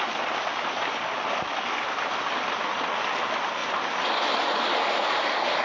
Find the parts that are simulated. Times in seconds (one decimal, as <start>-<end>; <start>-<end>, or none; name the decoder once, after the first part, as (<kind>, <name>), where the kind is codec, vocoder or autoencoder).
none